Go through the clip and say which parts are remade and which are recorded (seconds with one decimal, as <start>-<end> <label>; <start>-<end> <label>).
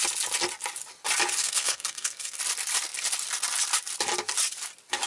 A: 0.0-1.4 recorded; 1.4-2.4 remade; 2.4-5.1 recorded